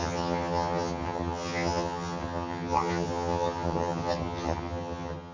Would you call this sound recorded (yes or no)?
no